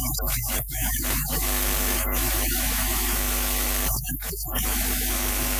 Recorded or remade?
remade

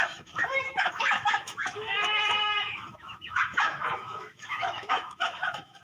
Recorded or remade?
remade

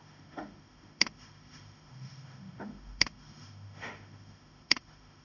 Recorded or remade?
remade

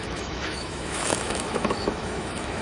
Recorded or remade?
remade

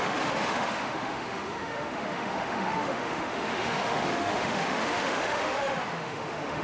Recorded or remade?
remade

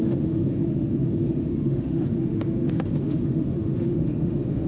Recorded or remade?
remade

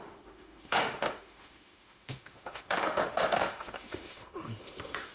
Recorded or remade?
remade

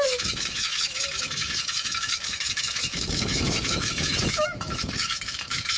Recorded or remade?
remade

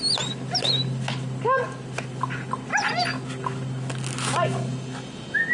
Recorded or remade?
recorded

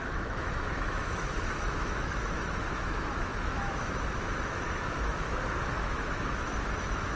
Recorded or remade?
remade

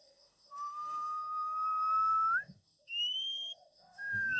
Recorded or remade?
remade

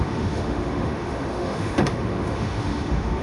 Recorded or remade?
remade